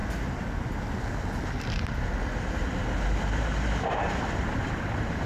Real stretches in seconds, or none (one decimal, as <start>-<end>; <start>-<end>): 0.0-3.2